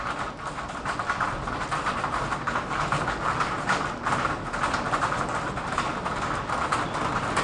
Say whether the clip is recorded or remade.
recorded